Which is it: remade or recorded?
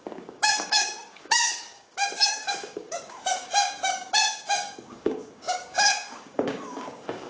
remade